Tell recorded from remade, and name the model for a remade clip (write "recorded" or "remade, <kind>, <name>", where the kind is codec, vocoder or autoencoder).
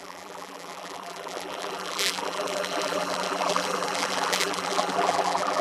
remade, vocoder, BigVGAN v2